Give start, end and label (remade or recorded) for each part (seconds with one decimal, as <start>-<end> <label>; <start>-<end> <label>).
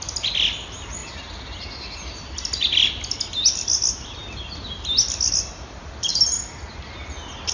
0.0-7.5 recorded